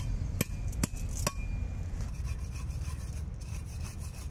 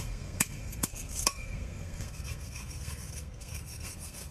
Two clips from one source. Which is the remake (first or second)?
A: second